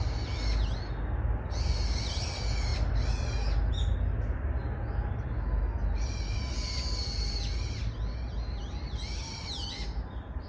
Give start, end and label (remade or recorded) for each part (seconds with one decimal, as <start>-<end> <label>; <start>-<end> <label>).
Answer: 0.0-10.5 recorded